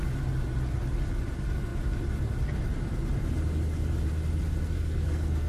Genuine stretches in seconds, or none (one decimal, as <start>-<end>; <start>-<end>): 0.0-4.6